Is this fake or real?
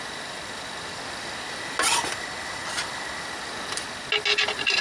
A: real